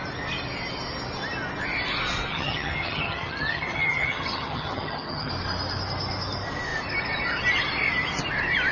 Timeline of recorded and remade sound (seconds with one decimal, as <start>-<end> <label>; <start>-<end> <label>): 0.0-2.3 recorded; 2.3-5.3 remade; 5.3-8.7 recorded